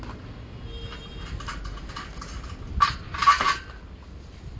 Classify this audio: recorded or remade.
recorded